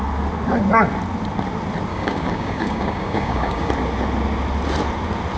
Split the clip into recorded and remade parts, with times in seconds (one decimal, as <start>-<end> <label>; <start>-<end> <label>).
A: 0.0-1.9 recorded; 1.9-3.7 remade; 3.7-5.4 recorded